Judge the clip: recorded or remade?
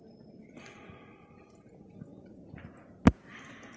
recorded